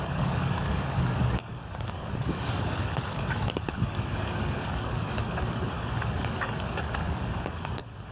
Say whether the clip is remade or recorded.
remade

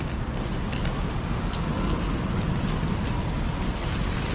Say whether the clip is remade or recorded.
recorded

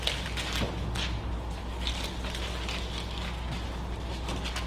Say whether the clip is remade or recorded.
recorded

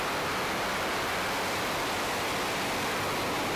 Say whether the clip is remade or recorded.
recorded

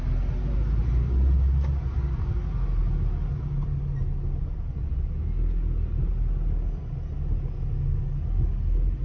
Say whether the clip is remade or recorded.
recorded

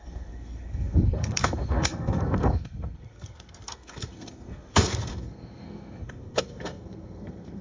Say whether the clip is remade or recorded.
remade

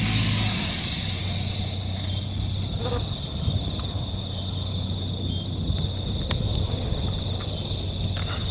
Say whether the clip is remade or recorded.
recorded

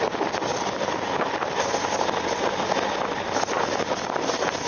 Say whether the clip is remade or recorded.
recorded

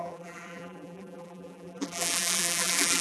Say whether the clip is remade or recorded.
remade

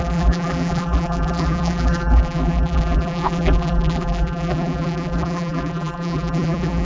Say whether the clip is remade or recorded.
remade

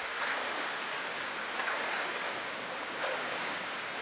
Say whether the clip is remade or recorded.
remade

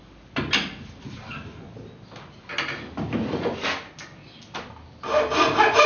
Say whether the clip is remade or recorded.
recorded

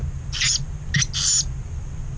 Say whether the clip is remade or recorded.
recorded